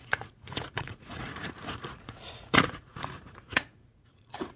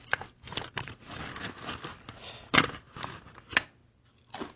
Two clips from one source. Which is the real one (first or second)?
second